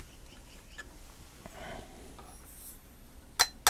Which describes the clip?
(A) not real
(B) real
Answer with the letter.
B